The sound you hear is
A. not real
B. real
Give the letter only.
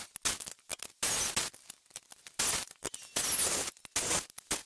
B